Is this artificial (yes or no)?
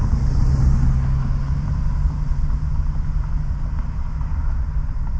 no